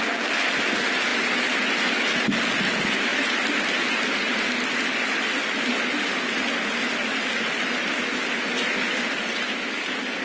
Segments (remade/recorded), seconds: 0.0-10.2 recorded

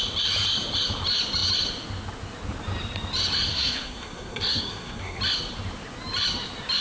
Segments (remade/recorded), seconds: 0.0-3.5 recorded; 3.5-5.2 remade; 5.2-6.8 recorded

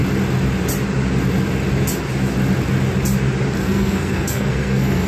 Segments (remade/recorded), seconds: 0.0-3.6 recorded; 3.6-5.1 remade

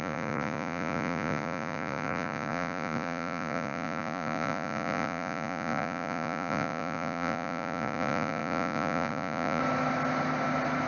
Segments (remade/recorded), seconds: 0.0-9.6 remade; 9.6-10.9 recorded

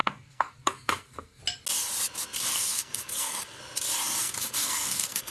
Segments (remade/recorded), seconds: 0.0-1.4 remade; 1.4-2.5 recorded; 2.5-3.6 remade; 3.6-4.2 recorded; 4.2-5.3 remade

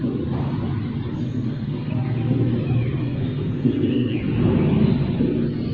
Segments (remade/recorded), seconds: 0.0-1.2 recorded; 1.2-1.9 remade; 1.9-3.0 recorded; 3.0-4.2 remade; 4.2-5.7 recorded

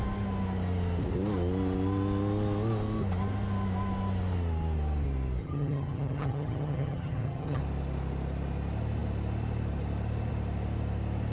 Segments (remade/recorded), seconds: 0.0-5.4 recorded; 5.4-7.6 remade; 7.6-11.3 recorded